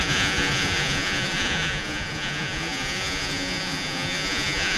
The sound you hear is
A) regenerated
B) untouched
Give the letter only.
A